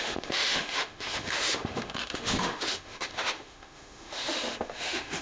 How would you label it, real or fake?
fake